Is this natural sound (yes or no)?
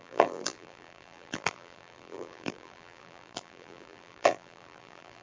no